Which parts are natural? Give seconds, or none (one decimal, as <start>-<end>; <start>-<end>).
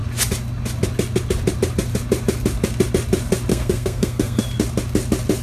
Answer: 0.0-3.5; 4.4-5.4